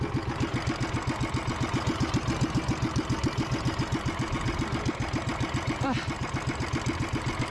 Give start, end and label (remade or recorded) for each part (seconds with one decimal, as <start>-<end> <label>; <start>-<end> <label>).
0.0-7.5 recorded